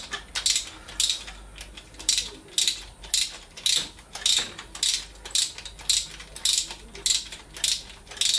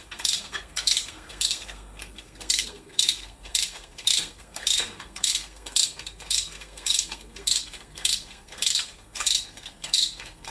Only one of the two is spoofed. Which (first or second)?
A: second